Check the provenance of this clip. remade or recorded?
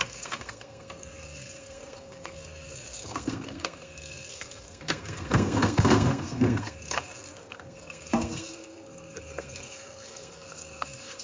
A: remade